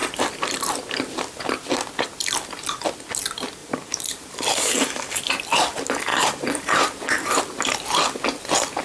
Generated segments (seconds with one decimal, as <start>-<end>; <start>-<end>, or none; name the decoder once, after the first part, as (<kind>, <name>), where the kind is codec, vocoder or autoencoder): 3.6-5.2 (vocoder, BigVGAN v2); 6.1-7.4